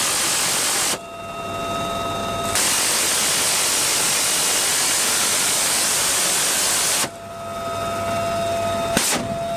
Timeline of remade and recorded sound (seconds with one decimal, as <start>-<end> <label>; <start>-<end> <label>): 0.0-2.2 recorded; 2.2-3.0 remade; 3.0-9.6 recorded